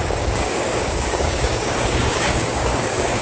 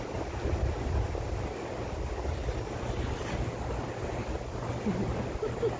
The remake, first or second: first